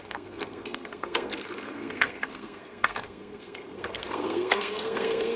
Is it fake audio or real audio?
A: fake